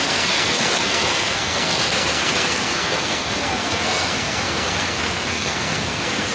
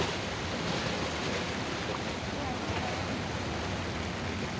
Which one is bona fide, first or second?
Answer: second